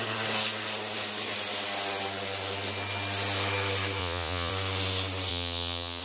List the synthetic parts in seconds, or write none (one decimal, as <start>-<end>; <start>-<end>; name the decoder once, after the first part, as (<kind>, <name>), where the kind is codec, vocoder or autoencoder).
4.0-4.5 (vocoder, Vocos); 5.3-6.0